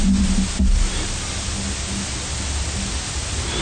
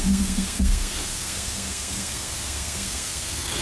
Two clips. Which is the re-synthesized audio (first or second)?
second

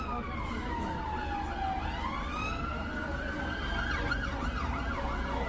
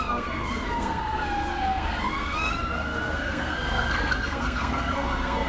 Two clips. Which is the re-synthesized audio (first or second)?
second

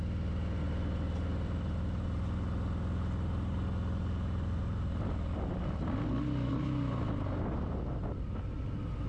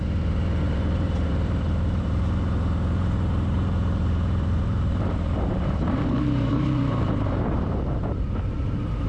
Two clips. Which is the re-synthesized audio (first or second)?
second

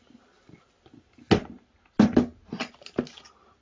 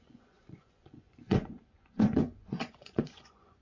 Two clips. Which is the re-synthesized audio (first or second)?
second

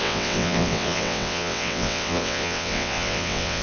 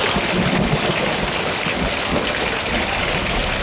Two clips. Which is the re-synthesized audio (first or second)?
first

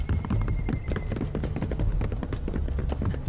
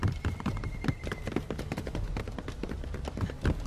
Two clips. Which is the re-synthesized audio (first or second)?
second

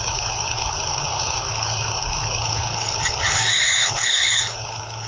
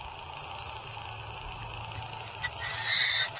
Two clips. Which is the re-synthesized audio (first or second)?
first